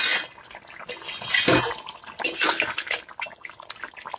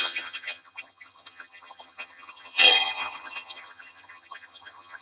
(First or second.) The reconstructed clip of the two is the second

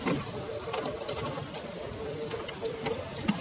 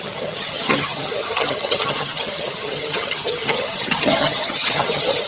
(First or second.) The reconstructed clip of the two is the second